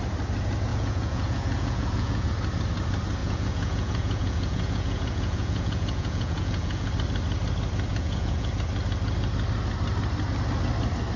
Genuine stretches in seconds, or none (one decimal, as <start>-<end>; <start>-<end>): 0.0-0.7; 2.3-3.2; 6.9-7.9; 8.5-11.2